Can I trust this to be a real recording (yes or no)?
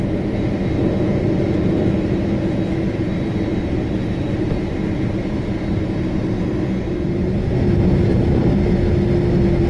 yes